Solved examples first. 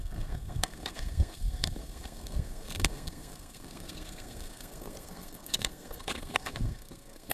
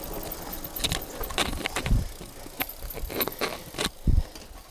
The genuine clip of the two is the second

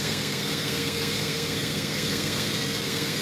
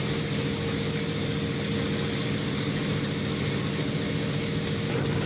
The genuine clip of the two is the second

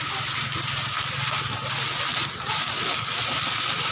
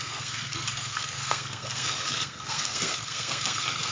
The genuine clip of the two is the first